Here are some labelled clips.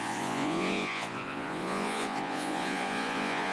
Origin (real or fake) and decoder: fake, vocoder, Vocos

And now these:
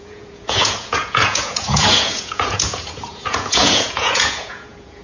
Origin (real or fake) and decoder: fake, vocoder, Vocos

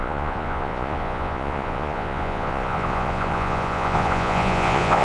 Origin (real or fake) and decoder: fake, vocoder, Vocos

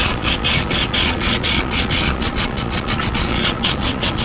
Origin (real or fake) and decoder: fake, vocoder, Vocos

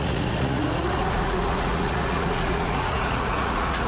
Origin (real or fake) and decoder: fake, vocoder, Vocos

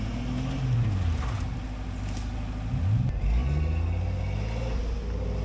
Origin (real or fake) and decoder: real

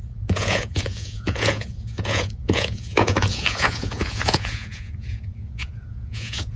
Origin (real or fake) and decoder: fake, vocoder, Vocos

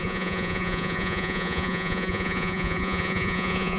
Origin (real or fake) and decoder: fake, vocoder, Vocos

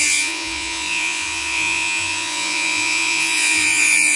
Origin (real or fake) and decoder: fake, vocoder, Vocos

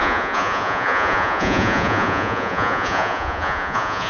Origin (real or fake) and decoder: fake, vocoder, Vocos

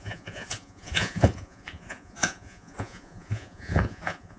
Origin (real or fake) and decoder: fake, vocoder, Vocos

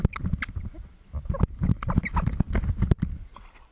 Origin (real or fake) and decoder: real